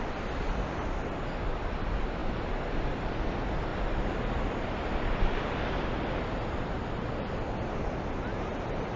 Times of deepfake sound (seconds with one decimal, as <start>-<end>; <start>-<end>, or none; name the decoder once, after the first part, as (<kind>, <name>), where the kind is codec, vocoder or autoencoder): none